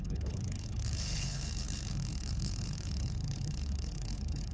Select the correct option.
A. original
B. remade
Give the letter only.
B